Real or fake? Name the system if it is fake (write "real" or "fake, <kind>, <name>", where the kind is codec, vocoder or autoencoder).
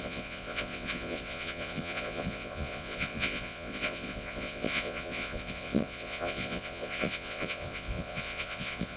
fake, vocoder, Vocos